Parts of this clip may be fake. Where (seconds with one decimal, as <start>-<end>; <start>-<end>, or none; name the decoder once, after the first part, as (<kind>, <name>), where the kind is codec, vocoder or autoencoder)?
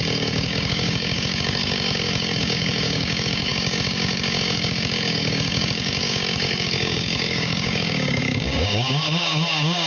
0.0-9.9 (codec, DAC)